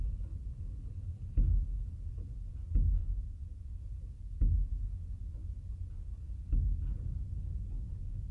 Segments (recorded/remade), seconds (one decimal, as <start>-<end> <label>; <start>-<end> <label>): 0.0-3.0 recorded; 3.0-3.8 remade; 3.8-8.3 recorded